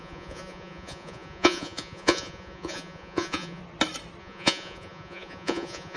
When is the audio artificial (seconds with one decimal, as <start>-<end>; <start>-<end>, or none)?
0.0-3.6; 4.2-6.0